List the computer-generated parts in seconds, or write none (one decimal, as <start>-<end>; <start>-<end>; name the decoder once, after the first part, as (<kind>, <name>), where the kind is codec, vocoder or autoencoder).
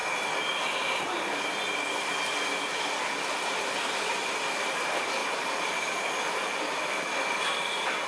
5.2-6.1 (vocoder, BigVGAN v2)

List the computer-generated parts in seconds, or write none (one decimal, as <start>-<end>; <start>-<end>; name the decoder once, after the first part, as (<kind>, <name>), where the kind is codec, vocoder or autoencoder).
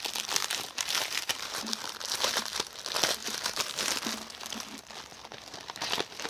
0.4-2.8 (vocoder, BigVGAN v2); 3.2-4.0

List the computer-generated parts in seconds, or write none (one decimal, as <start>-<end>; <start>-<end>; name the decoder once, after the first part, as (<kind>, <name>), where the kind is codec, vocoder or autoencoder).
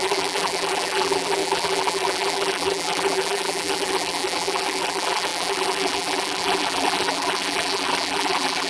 0.0-8.7 (vocoder, BigVGAN v2)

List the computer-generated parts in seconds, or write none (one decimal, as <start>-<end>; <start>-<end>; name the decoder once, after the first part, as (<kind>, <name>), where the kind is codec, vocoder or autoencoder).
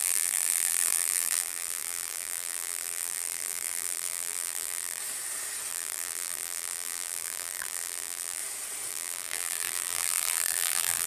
0.0-5.0 (vocoder, BigVGAN v2); 5.7-8.4; 8.9-11.1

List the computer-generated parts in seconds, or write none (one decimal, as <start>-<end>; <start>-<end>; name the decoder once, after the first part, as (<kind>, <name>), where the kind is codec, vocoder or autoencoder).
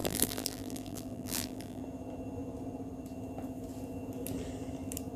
0.0-1.8 (vocoder, BigVGAN v2)